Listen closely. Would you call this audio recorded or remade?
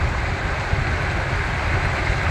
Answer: recorded